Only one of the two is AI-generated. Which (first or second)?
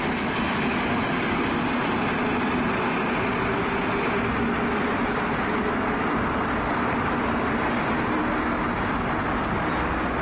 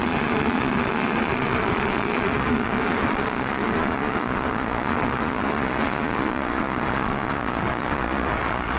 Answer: second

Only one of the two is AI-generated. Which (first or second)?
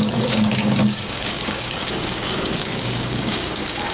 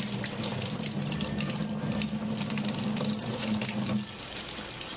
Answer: first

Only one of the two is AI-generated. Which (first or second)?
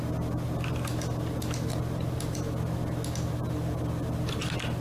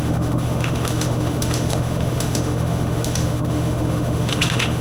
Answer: second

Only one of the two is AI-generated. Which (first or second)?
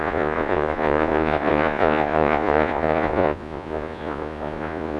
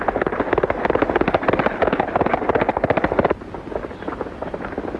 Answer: first